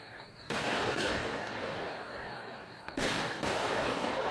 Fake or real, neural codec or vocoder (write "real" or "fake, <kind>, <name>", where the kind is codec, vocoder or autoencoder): fake, codec, DAC